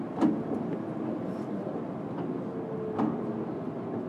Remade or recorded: recorded